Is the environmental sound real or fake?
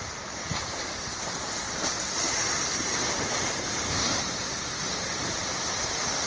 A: fake